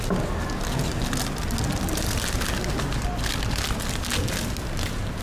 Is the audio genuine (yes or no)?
yes